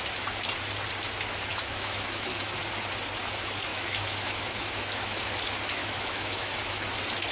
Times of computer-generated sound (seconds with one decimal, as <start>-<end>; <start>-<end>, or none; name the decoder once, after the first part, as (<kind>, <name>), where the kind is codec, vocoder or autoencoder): 1.5-2.6 (autoencoder, DAC-VAE); 3.7-5.3; 5.8-6.7